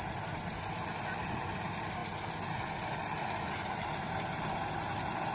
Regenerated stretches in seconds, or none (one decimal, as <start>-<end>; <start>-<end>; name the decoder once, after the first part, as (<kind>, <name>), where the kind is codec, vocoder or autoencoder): none